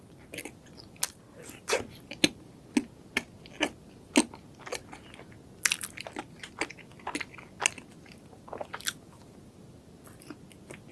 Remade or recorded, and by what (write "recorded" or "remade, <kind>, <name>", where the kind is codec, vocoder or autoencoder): recorded